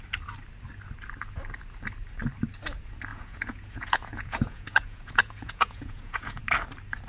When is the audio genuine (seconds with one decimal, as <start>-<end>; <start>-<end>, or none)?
0.0-3.1; 6.4-7.1